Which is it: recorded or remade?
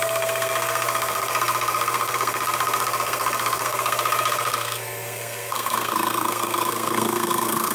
remade